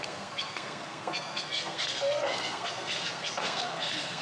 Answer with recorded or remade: remade